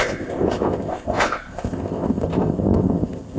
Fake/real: fake